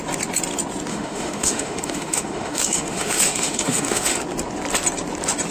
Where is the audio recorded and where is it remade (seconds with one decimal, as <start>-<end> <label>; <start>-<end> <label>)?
0.0-0.9 recorded; 0.9-4.2 remade; 4.2-5.5 recorded